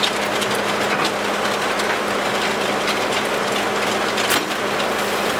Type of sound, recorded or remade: recorded